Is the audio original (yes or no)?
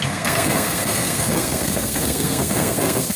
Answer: no